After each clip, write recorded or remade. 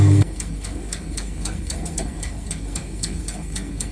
remade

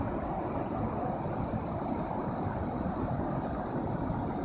recorded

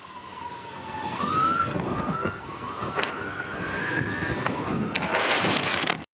remade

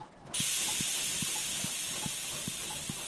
recorded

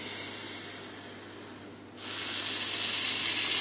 recorded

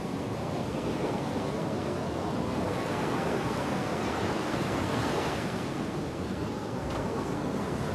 remade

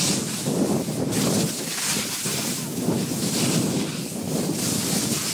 recorded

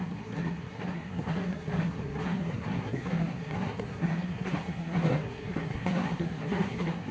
remade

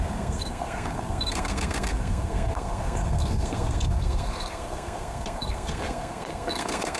remade